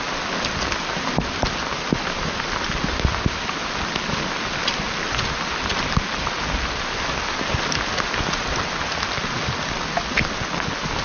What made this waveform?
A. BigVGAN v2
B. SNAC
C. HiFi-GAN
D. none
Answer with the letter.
D